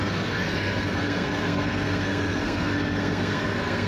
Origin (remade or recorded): remade